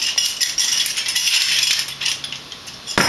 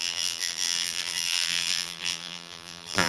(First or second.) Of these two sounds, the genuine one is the first